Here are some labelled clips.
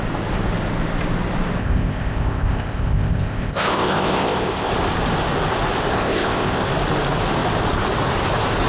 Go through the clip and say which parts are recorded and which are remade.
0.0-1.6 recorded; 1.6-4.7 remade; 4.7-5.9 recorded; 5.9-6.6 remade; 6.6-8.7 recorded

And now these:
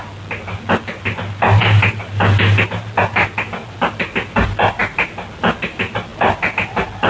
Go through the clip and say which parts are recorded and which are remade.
0.0-7.1 recorded

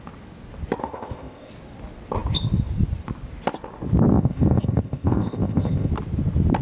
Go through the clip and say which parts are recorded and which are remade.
0.0-0.8 recorded; 0.8-1.5 remade; 1.5-4.1 recorded; 4.1-5.9 remade; 5.9-6.6 recorded